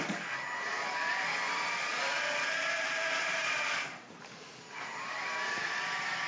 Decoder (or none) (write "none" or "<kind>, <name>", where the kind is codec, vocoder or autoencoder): none